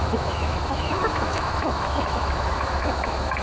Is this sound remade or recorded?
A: remade